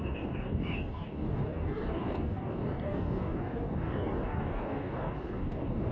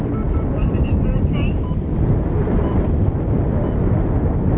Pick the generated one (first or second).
first